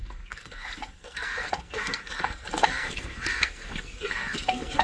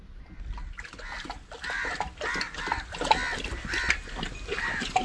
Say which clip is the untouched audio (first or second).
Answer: second